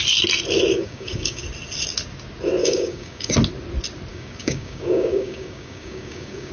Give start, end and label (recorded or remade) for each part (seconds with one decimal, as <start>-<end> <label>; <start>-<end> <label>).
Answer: 0.0-0.7 recorded; 0.7-1.4 remade; 1.4-2.6 recorded; 2.6-3.3 remade; 3.3-4.1 recorded; 4.1-6.5 remade